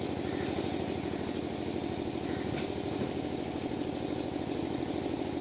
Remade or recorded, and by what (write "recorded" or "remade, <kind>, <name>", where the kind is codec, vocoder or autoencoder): recorded